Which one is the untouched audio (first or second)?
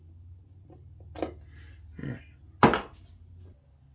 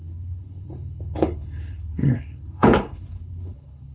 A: first